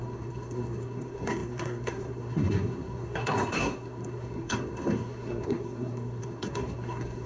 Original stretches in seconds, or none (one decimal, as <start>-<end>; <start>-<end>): none

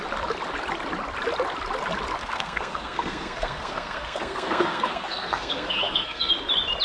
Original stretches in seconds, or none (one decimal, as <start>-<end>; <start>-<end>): 0.0-2.2; 6.3-6.8

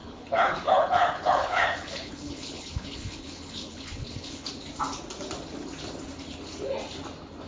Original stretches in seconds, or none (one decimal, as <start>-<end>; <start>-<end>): 4.5-7.5

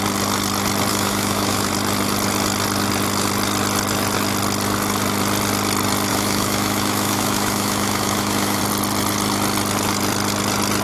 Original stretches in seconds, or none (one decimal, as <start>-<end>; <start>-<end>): 0.0-0.9; 1.7-6.1; 8.6-10.8